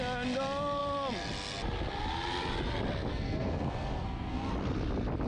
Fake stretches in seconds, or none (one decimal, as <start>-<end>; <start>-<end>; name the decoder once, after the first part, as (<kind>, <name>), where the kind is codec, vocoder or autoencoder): 3.1-4.5 (codec, SNAC)